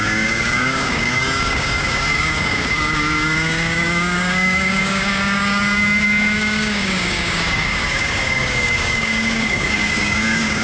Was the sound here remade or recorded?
remade